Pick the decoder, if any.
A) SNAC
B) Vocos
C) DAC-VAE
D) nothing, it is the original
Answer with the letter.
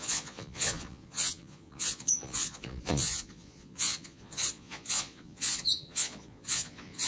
B